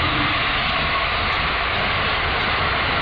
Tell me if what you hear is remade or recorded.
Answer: recorded